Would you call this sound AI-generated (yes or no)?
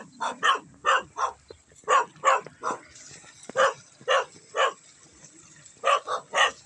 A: no